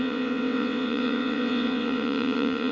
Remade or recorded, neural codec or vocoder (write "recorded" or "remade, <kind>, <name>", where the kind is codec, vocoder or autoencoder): remade, vocoder, WaveNeXt